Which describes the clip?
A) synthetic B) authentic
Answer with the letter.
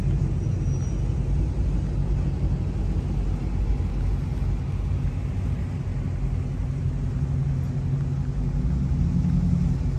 B